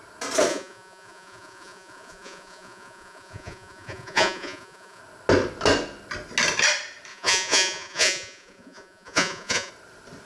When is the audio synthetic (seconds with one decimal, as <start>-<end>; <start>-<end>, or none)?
0.5-5.0; 7.1-9.7